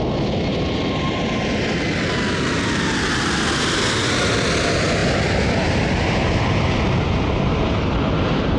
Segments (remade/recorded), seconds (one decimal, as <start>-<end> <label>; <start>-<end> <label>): 0.0-0.5 recorded; 0.5-1.4 remade; 1.4-8.6 recorded